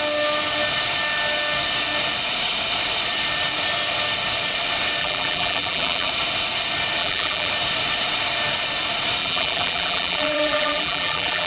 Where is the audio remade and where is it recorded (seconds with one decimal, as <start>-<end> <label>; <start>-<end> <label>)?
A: 0.0-5.0 recorded; 5.0-6.1 remade; 6.1-7.0 recorded; 7.0-7.5 remade; 7.5-9.2 recorded; 9.2-11.5 remade